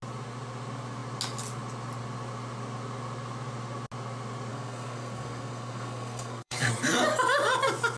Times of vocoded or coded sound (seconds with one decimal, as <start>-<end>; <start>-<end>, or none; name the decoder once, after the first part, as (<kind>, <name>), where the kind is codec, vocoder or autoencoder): 4.5-6.7 (codec, SNAC)